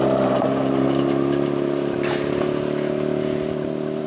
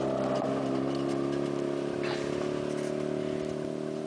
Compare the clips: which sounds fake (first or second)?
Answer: first